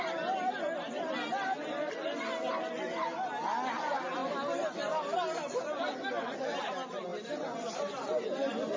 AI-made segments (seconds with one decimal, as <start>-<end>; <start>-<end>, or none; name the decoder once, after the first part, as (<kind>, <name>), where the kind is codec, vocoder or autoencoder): none